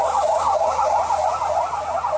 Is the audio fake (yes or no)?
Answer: no